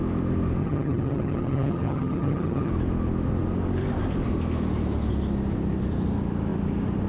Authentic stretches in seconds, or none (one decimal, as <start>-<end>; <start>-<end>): 0.0-0.6; 2.7-7.1